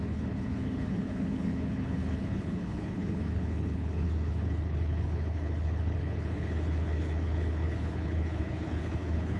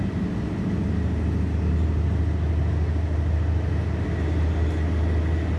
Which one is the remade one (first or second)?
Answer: first